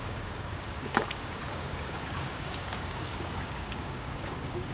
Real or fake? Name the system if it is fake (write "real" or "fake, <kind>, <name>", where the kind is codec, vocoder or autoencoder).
fake, codec, DAC